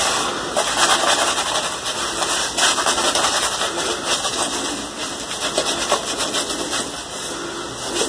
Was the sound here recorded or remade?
recorded